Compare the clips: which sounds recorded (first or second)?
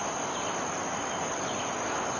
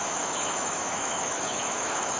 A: first